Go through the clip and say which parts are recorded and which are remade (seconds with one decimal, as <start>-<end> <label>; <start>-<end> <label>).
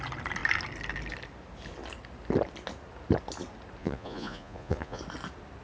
0.0-3.8 recorded; 3.8-5.0 remade; 5.0-5.6 recorded